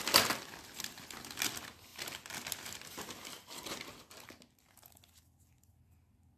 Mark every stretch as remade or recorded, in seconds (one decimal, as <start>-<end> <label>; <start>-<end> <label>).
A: 0.0-6.4 recorded